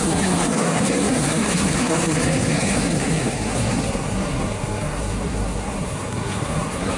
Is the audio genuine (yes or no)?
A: no